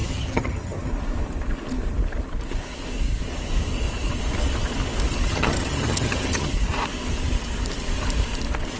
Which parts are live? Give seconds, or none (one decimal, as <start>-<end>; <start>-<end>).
0.9-5.3; 6.5-8.8